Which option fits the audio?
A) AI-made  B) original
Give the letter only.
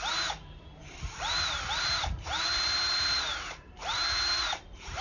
A